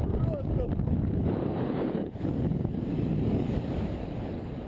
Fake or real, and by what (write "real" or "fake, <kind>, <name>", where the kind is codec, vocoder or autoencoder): fake, codec, DAC